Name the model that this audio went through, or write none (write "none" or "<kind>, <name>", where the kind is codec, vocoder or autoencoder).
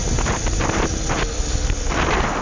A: none